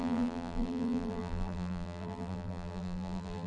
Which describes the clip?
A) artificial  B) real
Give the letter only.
A